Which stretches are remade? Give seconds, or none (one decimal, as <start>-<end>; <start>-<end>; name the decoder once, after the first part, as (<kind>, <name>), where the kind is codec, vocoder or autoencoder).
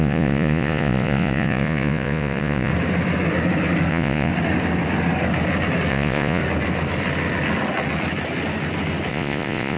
0.0-2.7 (vocoder, Vocos); 3.9-4.3; 5.9-6.4; 9.1-9.8